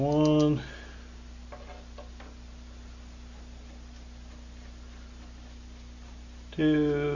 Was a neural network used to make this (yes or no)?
no